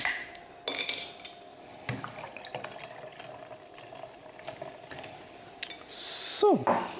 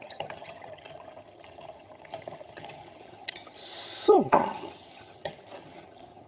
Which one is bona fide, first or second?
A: first